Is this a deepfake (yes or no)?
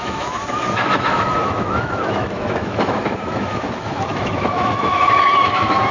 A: yes